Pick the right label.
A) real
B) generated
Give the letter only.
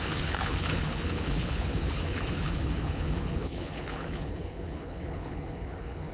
B